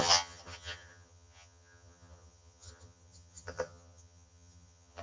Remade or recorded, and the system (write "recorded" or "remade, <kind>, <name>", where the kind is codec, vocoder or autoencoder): remade, vocoder, HiFi-GAN